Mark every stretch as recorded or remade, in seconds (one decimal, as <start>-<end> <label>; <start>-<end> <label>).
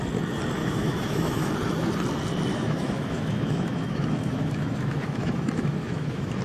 0.0-0.6 recorded; 0.6-1.5 remade; 1.5-2.5 recorded; 2.5-6.4 remade